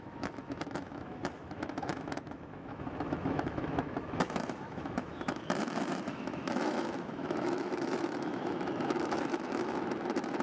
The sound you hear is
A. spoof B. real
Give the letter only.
A